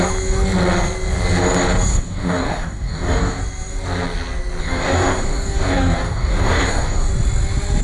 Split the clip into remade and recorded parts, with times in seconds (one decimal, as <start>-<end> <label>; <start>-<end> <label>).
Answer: 0.0-1.9 recorded; 1.9-3.3 remade; 3.3-4.6 recorded; 4.6-7.1 remade; 7.1-7.8 recorded